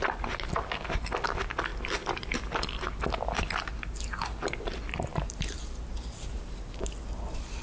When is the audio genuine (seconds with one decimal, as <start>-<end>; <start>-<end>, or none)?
0.0-5.1; 6.8-7.6